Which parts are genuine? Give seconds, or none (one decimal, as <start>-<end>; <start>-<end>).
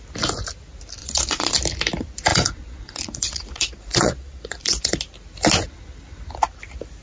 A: 0.0-1.0; 1.5-2.3; 5.0-7.0